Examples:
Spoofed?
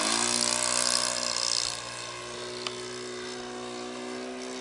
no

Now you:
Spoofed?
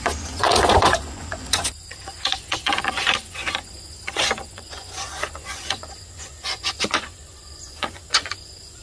yes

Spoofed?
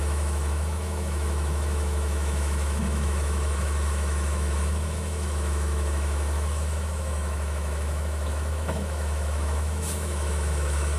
yes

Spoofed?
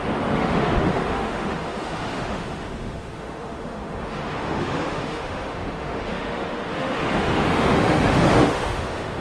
yes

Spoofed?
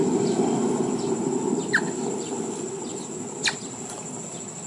no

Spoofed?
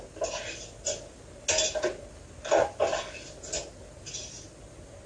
no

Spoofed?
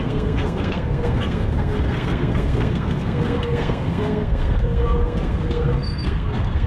yes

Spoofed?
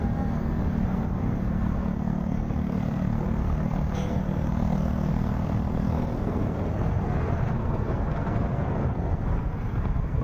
yes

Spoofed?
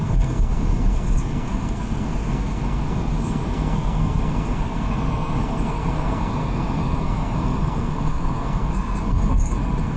yes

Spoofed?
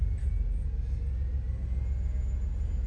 no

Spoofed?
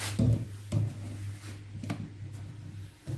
no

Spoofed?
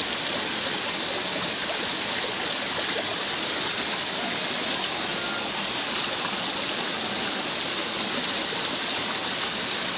no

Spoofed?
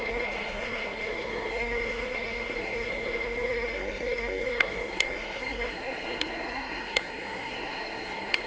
yes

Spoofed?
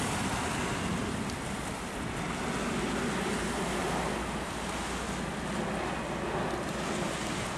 no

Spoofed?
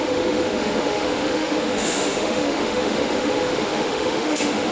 yes